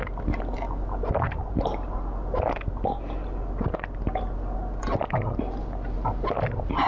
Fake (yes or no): no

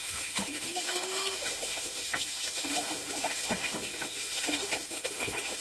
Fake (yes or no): yes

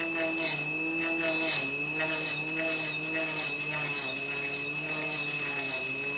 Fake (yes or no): no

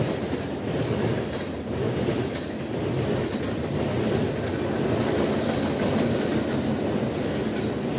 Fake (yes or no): no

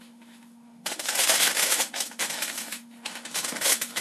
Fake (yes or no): yes